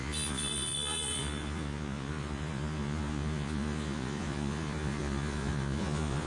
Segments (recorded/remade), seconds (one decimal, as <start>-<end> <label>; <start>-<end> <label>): 0.0-6.3 remade